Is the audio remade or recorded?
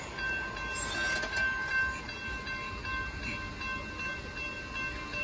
recorded